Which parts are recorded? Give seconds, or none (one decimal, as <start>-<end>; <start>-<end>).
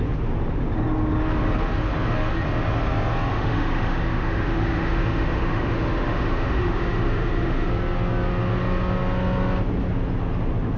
0.0-3.3; 7.7-10.8